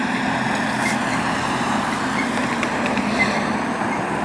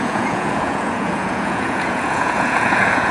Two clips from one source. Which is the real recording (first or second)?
first